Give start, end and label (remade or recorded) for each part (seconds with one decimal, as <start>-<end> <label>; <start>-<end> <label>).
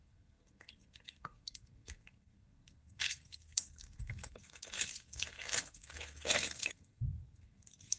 0.0-8.0 remade